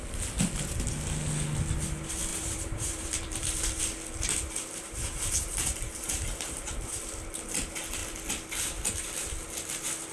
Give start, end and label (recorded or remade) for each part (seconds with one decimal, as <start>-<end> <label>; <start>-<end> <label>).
0.0-2.3 recorded; 2.3-3.8 remade; 3.8-4.6 recorded; 4.6-7.0 remade; 7.0-10.1 recorded